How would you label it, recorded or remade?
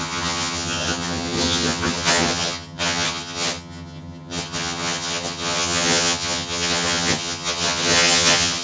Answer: remade